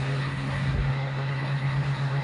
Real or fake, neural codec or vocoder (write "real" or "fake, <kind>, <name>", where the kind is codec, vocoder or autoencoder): fake, codec, SNAC